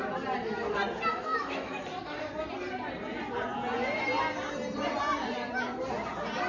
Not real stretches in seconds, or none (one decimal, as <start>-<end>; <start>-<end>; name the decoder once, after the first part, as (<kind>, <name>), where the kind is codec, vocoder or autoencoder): 1.1-1.8 (autoencoder, DAC-VAE)

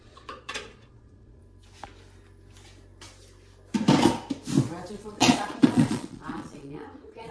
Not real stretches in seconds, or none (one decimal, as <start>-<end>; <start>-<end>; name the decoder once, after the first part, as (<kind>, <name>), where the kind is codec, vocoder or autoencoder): 0.0-1.4 (vocoder, Vocos); 4.9-7.3